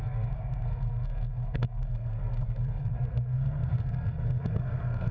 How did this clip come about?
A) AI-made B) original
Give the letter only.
A